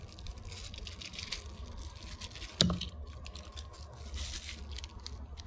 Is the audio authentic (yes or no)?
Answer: yes